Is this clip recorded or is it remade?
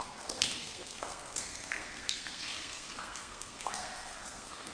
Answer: remade